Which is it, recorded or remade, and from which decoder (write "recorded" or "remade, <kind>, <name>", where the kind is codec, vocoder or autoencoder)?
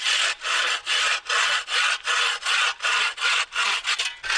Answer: recorded